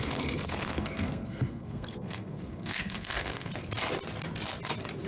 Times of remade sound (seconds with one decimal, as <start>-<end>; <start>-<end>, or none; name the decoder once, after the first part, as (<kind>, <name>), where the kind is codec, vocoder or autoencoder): 0.0-3.5 (codec, SNAC)